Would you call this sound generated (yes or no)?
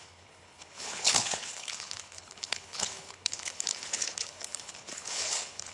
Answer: yes